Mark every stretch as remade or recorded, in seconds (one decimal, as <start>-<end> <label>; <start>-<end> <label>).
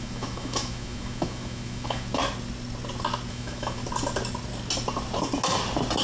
0.0-2.2 remade; 2.2-3.3 recorded; 3.3-3.8 remade; 3.8-6.0 recorded